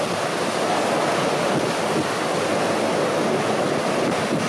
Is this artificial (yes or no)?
no